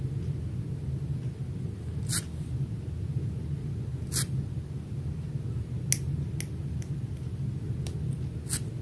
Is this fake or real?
real